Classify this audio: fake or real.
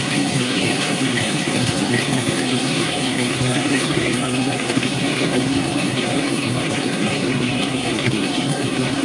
fake